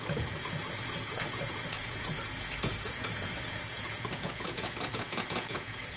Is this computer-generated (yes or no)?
yes